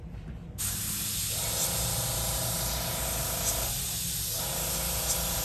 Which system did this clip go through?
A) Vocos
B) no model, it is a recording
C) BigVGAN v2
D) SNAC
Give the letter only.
B